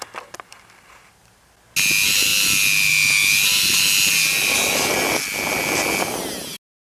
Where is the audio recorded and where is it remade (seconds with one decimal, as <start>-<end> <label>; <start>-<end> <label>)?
0.0-6.9 recorded